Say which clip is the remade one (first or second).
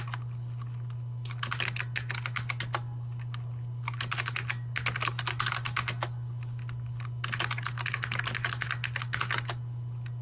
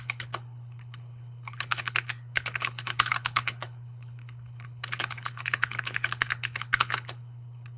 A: second